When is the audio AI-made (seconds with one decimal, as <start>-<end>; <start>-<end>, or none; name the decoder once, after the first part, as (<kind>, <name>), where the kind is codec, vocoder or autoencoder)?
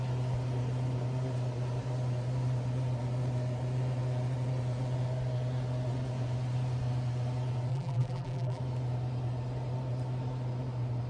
7.7-8.6 (vocoder, BigVGAN v2)